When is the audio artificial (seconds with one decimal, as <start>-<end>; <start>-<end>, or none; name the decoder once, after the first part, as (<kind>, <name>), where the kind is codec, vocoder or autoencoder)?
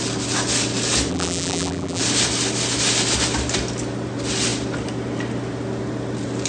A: 1.1-2.0 (vocoder, BigVGAN v2)